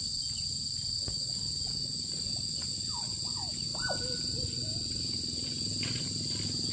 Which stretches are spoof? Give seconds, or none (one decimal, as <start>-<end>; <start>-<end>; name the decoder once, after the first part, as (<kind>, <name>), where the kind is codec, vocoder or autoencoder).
none